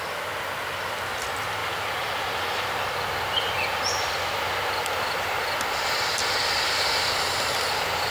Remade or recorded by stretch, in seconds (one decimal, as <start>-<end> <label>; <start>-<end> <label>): 0.0-1.6 recorded; 1.6-2.7 remade; 2.7-8.1 recorded

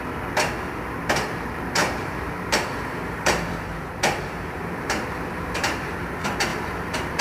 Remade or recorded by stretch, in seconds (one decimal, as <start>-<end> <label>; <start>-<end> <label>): 0.0-1.8 recorded; 1.8-6.1 remade; 6.1-6.5 recorded; 6.5-7.2 remade